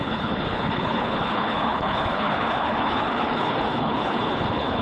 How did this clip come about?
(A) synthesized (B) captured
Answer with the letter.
A